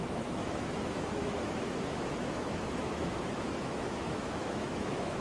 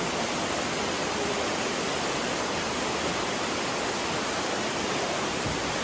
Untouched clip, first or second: second